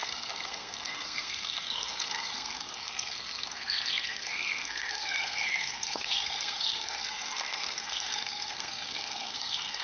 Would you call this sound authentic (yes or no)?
no